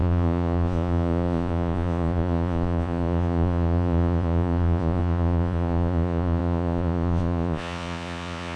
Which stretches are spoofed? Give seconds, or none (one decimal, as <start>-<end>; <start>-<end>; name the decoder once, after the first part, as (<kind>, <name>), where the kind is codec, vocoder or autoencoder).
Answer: 0.0-8.6 (vocoder, Vocos)